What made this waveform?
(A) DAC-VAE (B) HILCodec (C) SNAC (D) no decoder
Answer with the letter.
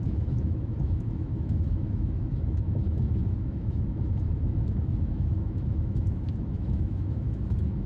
A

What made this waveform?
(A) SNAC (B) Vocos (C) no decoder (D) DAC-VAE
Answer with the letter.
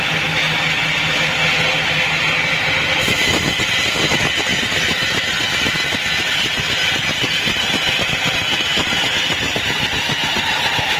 C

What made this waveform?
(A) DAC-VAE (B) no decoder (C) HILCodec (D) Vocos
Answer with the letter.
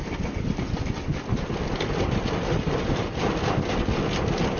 B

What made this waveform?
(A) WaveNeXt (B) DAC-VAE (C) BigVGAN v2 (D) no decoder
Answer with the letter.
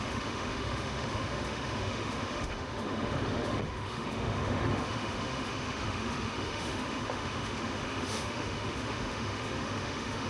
B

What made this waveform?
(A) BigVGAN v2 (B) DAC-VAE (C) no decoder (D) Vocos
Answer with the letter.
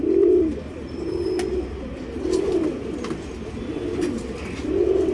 C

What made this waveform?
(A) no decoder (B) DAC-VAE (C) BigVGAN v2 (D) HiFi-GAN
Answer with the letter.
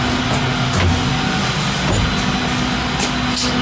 A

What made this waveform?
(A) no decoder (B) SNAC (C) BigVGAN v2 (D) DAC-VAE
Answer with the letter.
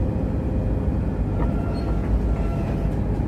A